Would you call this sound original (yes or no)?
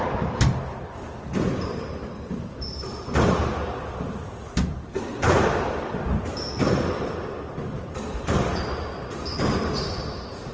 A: yes